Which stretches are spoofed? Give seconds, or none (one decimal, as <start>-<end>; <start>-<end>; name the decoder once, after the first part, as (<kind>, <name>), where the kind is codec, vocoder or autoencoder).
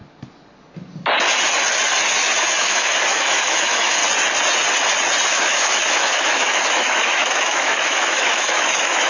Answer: 2.6-4.0 (autoencoder, DAC-VAE); 5.3-9.1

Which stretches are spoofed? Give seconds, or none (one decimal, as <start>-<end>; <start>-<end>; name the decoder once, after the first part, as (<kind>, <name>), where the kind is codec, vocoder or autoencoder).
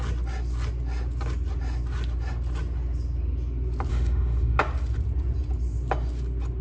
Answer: 3.9-4.6 (autoencoder, DAC-VAE)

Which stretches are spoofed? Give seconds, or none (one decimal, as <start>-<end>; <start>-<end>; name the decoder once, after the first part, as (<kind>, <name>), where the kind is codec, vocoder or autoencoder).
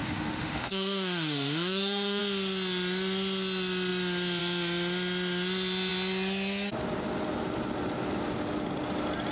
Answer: 0.0-2.2 (autoencoder, DAC-VAE)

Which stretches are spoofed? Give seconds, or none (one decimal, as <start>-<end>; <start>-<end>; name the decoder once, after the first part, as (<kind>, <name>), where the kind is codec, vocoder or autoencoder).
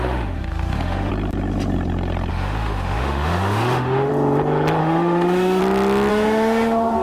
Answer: 0.0-1.1 (autoencoder, DAC-VAE); 2.3-4.1; 4.8-5.6; 6.1-7.0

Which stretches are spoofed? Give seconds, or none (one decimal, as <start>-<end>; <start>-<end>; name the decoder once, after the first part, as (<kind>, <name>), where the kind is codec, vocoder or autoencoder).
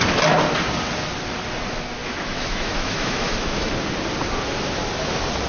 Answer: 2.0-3.7 (autoencoder, DAC-VAE)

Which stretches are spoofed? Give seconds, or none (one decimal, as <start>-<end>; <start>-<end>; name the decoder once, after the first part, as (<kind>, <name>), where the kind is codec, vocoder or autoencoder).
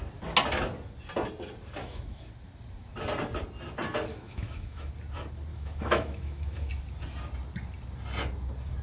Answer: 1.8-2.3 (autoencoder, DAC-VAE); 4.1-4.9; 5.5-6.7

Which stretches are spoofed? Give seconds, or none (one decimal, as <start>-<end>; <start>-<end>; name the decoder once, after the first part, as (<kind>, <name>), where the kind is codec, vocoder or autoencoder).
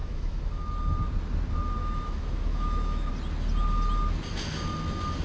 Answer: 0.0-0.6 (autoencoder, DAC-VAE); 1.8-3.1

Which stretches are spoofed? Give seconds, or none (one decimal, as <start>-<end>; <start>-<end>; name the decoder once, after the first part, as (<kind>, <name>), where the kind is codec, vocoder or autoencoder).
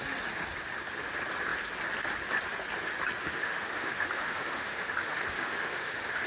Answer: 3.2-6.3 (autoencoder, DAC-VAE)